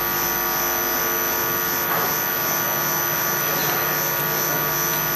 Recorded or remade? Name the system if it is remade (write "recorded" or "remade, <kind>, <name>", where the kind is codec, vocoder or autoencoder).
recorded